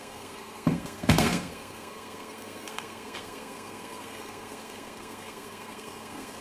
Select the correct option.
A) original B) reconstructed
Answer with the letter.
B